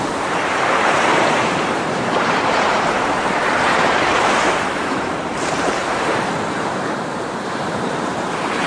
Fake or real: fake